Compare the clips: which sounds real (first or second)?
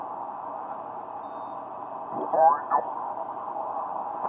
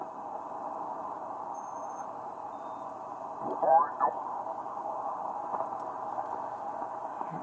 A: first